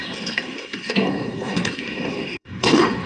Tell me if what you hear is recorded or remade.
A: remade